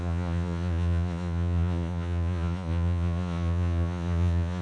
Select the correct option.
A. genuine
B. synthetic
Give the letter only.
B